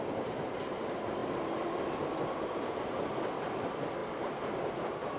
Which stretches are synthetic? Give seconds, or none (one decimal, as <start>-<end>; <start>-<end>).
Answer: none

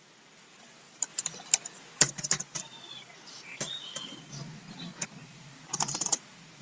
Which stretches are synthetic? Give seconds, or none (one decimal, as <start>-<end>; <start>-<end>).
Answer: 0.0-1.1; 2.0-4.9; 5.4-6.6

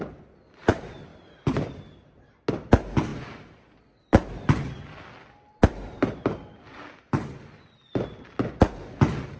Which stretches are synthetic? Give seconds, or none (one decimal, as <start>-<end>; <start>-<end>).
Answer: none

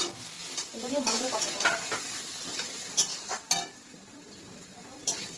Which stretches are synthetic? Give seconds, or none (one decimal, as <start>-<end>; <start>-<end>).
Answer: 0.0-3.1; 4.8-5.4

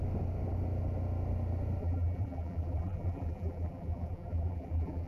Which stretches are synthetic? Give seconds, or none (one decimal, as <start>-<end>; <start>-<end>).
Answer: 1.8-5.1